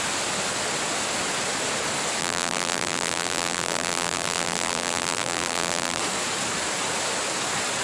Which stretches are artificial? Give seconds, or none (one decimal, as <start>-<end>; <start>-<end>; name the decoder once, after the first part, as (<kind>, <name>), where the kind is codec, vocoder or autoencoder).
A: 2.2-6.0 (vocoder, BigVGAN v2)